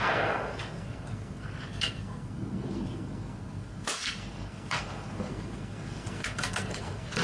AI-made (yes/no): yes